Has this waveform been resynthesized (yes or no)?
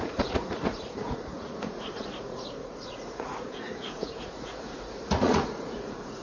yes